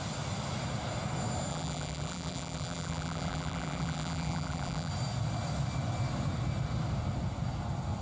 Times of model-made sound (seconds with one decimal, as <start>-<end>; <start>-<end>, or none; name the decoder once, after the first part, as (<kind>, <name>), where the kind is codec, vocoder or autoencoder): 1.5-4.9 (vocoder, BigVGAN v2)